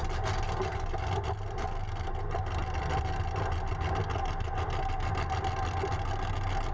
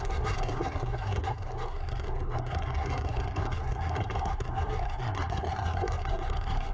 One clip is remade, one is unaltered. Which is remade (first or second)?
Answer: second